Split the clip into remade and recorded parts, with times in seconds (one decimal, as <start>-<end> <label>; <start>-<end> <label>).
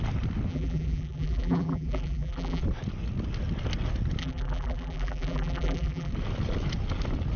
0.0-0.5 recorded; 0.5-2.6 remade; 2.6-4.2 recorded; 4.2-6.1 remade; 6.1-7.4 recorded